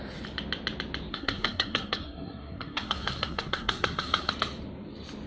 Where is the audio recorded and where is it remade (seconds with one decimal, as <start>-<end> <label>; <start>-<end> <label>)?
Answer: 0.0-1.1 recorded; 1.1-4.3 remade; 4.3-5.3 recorded